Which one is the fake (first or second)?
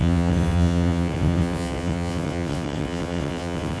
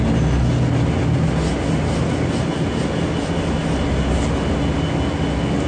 first